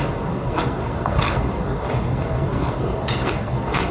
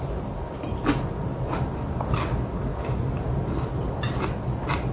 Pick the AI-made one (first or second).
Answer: first